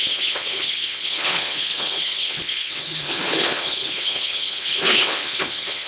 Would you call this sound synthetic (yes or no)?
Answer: yes